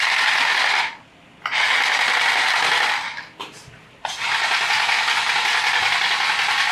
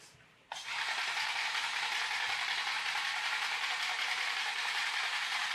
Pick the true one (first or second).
first